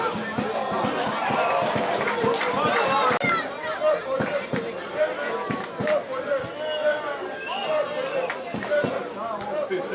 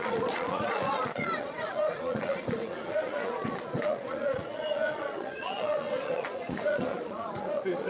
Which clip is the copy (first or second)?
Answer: second